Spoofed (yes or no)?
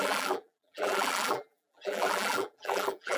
yes